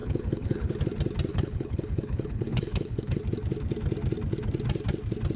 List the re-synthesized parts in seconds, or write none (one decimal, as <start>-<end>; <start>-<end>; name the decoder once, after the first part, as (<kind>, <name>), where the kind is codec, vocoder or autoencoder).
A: 0.0-0.8 (codec, HILCodec); 1.3-3.2